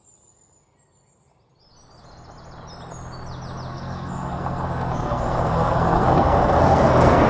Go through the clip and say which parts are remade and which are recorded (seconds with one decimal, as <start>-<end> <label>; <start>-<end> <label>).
0.0-3.7 recorded; 3.7-7.3 remade